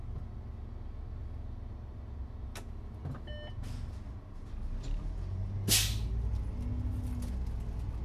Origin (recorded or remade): recorded